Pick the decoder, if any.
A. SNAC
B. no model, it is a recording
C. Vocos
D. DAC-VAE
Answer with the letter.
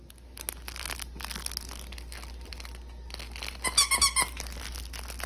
B